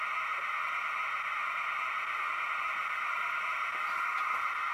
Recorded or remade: recorded